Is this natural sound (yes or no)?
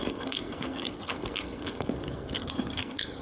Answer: no